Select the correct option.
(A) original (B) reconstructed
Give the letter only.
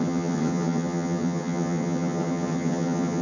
B